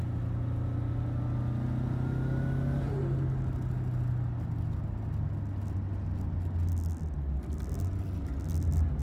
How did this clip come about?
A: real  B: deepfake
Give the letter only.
A